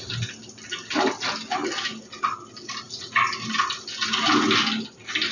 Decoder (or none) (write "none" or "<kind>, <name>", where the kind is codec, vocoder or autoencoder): none